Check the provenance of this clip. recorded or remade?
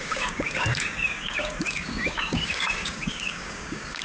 remade